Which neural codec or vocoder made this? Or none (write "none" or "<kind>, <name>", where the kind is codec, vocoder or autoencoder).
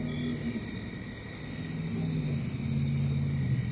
none